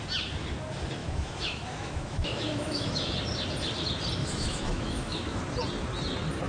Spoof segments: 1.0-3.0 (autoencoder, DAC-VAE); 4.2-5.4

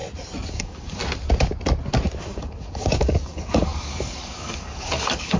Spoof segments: 0.5-1.0 (codec, DAC); 2.2-5.4

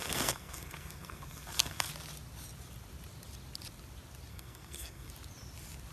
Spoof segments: 0.0-1.9 (codec, SNAC); 4.3-5.1

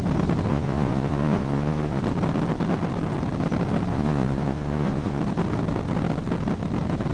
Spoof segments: 0.5-2.0 (vocoder, Vocos); 3.9-5.2

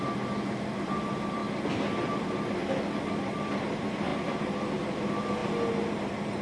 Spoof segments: 0.0-1.4 (vocoder, BigVGAN v2); 2.2-2.6; 3.1-5.4; 5.9-6.4

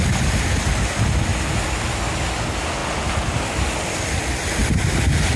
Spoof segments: 4.6-5.4 (vocoder, BigVGAN v2)